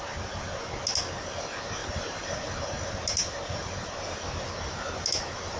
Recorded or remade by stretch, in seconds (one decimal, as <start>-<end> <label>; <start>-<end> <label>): 0.0-1.8 recorded; 1.8-2.4 remade; 2.4-3.2 recorded; 3.2-4.0 remade; 4.0-5.6 recorded